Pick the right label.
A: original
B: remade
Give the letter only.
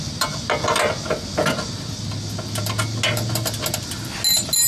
A